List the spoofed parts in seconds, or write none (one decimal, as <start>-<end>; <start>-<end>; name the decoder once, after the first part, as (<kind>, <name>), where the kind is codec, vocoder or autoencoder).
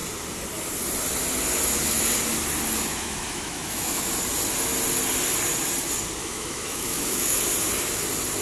2.9-4.1 (autoencoder, DAC-VAE); 6.2-7.4